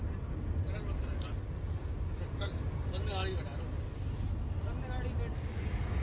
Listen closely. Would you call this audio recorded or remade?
recorded